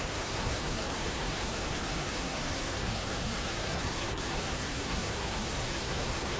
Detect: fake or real fake